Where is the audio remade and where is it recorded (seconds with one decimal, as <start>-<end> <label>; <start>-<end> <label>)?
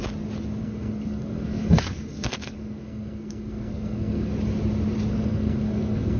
0.0-0.6 recorded; 0.6-4.3 remade; 4.3-5.1 recorded; 5.1-6.2 remade